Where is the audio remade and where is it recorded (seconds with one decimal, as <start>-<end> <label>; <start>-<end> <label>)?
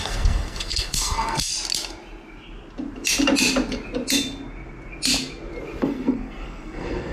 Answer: 0.0-1.5 remade; 1.5-5.8 recorded; 5.8-7.1 remade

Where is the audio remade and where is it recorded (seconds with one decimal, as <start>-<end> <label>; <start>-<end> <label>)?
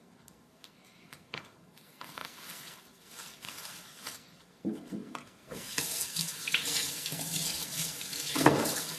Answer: 0.0-9.0 remade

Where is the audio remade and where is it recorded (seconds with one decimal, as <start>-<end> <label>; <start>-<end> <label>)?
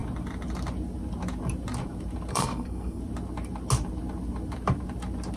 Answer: 0.0-2.3 recorded; 2.3-3.0 remade; 3.0-5.4 recorded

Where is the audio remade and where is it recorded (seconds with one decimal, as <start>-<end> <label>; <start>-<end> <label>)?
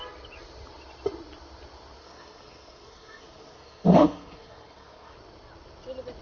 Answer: 0.0-2.0 recorded; 2.0-5.1 remade; 5.1-6.2 recorded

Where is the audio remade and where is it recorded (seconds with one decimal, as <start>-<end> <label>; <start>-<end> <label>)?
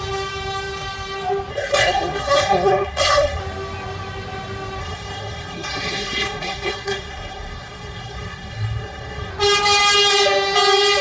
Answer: 0.0-1.5 recorded; 1.5-3.4 remade; 3.4-4.8 recorded; 4.8-9.3 remade; 9.3-11.0 recorded